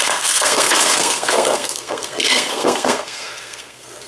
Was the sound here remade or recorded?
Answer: remade